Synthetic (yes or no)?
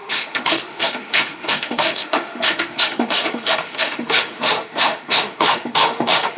yes